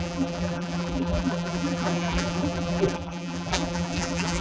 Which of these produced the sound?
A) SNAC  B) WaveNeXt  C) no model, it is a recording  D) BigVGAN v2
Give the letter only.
D